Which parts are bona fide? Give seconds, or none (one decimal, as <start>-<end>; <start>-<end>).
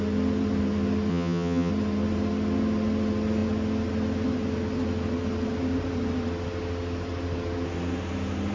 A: 0.0-1.1; 1.7-8.5